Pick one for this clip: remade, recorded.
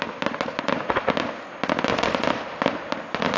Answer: recorded